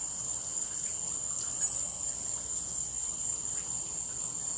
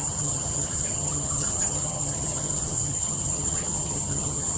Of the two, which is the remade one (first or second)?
second